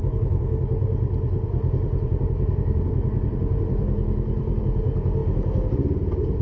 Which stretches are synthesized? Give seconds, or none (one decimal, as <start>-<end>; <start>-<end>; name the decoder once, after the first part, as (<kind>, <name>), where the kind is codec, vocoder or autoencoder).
0.8-4.6 (vocoder, BigVGAN v2)